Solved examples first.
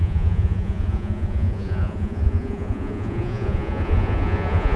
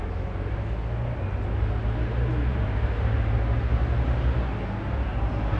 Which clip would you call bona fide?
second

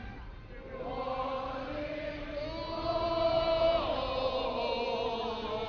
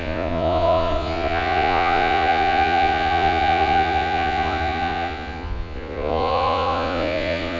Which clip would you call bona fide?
first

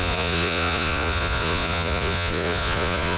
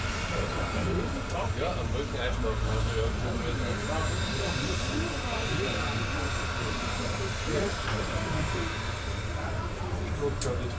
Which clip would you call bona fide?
second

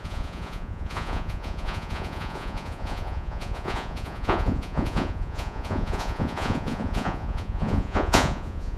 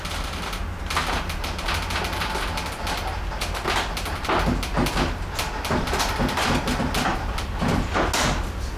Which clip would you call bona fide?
second